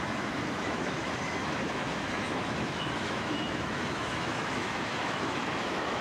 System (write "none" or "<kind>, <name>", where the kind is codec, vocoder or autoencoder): autoencoder, DAC-VAE